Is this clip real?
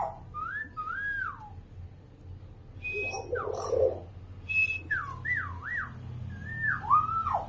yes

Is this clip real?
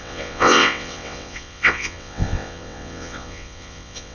no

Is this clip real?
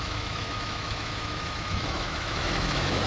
no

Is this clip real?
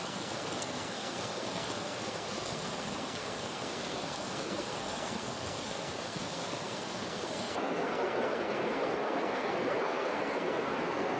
no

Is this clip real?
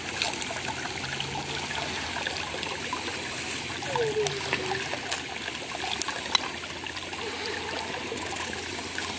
yes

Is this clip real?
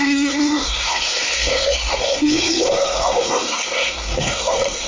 no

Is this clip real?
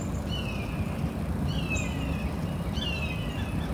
yes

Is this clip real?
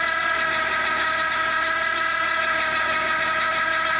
yes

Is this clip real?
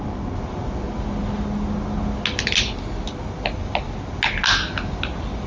yes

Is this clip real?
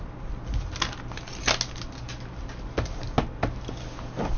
yes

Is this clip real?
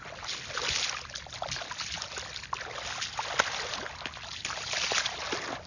yes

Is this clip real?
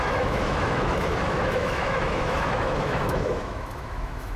no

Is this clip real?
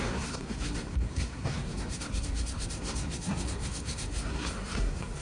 no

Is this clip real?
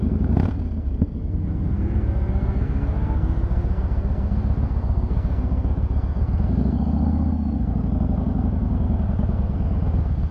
no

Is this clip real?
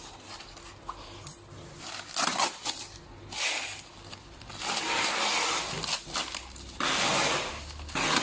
yes